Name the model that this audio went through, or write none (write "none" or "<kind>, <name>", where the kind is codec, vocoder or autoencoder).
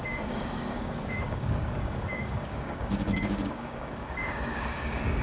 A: codec, DAC